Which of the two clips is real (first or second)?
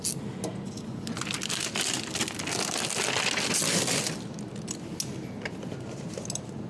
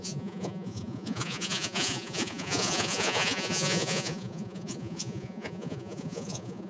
first